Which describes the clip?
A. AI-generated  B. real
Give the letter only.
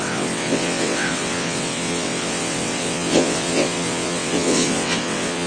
A